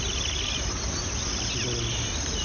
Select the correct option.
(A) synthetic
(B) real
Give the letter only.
B